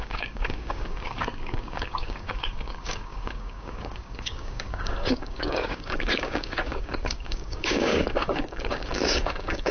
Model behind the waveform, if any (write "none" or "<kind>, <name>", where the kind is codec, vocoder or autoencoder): codec, DAC